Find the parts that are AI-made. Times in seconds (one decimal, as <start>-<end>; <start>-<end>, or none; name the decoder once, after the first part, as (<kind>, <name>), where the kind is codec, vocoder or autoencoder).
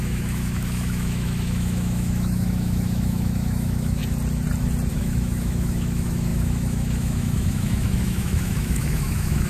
0.0-4.0 (autoencoder, DAC-VAE); 4.9-9.5